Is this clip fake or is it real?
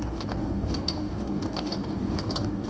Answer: fake